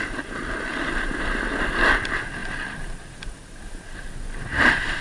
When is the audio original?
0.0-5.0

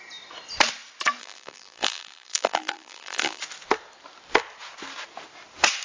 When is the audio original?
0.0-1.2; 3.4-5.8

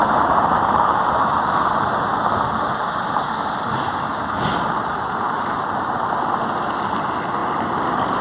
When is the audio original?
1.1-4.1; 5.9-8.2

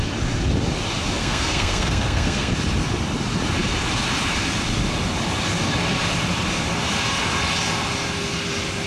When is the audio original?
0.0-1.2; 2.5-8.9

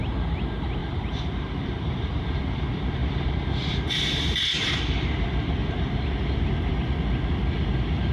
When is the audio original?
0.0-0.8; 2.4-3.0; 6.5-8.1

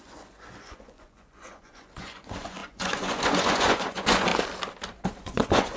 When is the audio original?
4.3-5.2

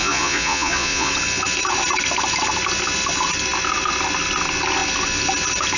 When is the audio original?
1.1-5.8